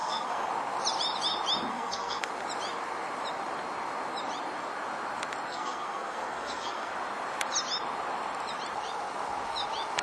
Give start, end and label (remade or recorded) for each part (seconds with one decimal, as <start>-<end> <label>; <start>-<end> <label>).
0.0-0.5 remade; 0.5-1.7 recorded; 1.7-2.3 remade; 2.3-5.5 recorded; 5.5-6.9 remade; 6.9-10.0 recorded